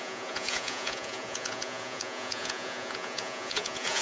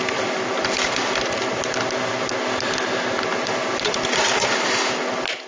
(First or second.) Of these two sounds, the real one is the second